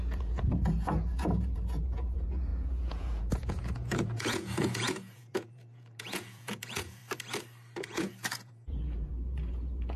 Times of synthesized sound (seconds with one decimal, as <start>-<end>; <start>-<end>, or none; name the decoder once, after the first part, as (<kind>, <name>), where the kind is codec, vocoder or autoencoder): 0.0-7.0 (vocoder, Vocos); 7.8-10.0